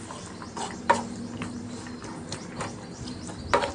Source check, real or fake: real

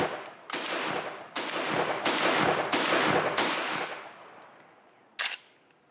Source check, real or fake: real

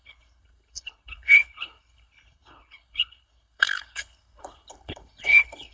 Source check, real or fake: fake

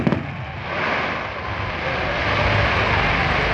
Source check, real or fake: real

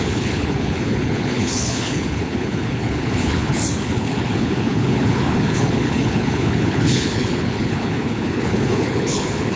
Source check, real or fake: fake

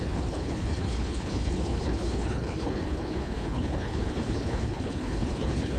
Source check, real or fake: fake